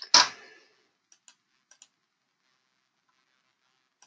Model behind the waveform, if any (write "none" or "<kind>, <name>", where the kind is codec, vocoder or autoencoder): none